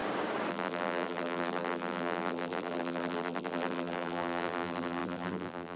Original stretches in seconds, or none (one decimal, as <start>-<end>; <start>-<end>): 0.0-0.5